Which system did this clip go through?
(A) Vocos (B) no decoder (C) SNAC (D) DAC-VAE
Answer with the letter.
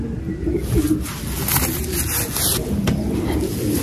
B